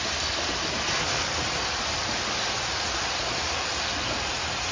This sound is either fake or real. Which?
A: real